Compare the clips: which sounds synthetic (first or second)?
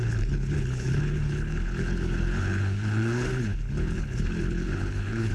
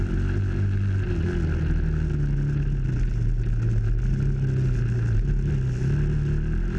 first